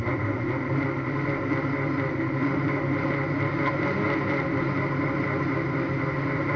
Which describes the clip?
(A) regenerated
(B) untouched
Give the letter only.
B